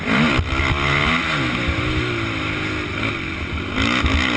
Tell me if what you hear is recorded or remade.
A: recorded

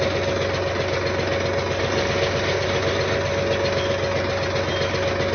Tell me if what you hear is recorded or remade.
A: recorded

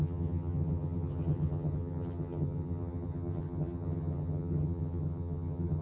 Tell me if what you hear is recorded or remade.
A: remade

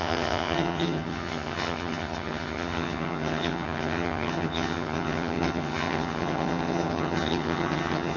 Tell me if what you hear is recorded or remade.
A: remade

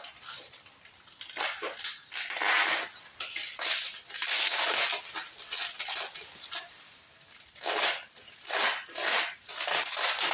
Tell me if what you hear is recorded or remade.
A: recorded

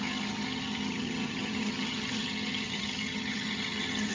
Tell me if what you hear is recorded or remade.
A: remade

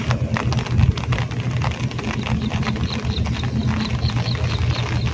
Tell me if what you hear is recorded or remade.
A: recorded